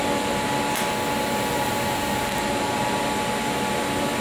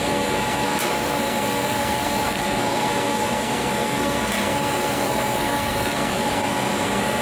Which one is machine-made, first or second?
second